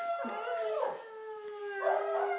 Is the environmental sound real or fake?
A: real